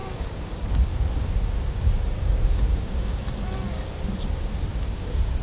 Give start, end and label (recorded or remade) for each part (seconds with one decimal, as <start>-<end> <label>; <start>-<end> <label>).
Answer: 0.0-3.2 remade; 3.2-4.7 recorded; 4.7-5.4 remade